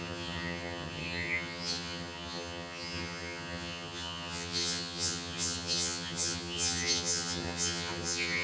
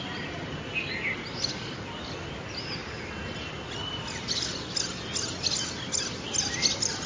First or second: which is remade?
first